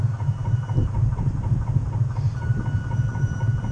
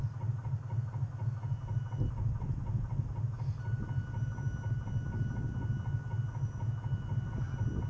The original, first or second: second